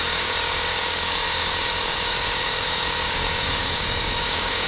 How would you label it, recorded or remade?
remade